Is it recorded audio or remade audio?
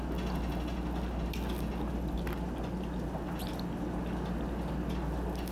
recorded